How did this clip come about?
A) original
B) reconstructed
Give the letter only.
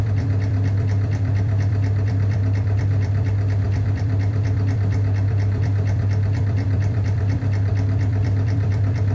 B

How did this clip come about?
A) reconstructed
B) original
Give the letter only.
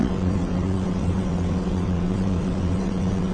A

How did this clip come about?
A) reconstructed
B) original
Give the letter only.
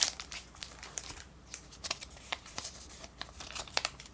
A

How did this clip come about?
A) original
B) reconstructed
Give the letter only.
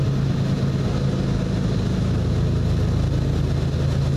A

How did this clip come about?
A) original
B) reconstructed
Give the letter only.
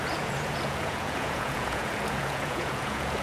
B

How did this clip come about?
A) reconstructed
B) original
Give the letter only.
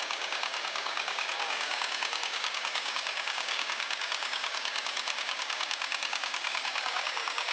A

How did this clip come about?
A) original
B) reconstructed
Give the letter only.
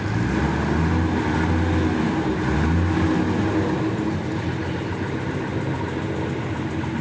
A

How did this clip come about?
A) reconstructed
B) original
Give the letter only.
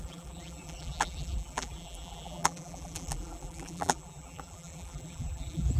A